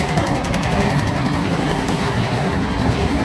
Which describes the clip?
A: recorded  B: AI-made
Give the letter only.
B